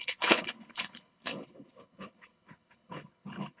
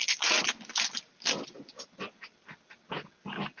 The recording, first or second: second